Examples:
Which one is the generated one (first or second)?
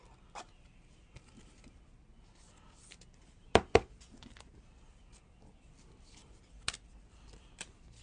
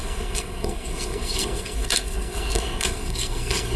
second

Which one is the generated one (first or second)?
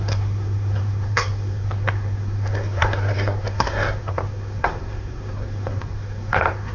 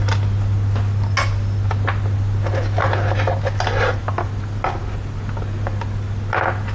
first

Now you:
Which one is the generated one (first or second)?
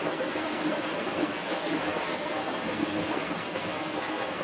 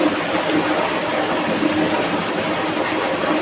first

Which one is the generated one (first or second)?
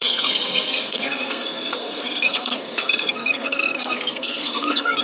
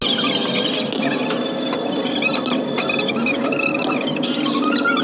first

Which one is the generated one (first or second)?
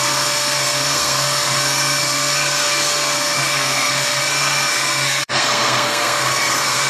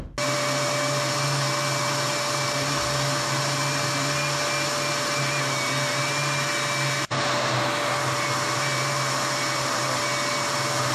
first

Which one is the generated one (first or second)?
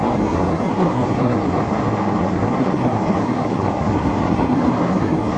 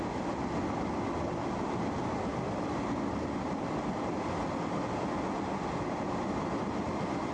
first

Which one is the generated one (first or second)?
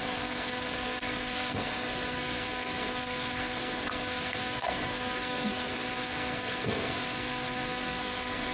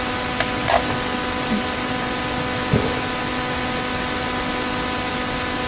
first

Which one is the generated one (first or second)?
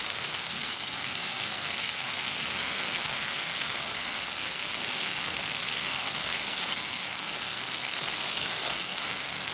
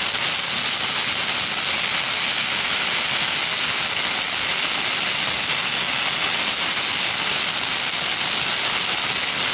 first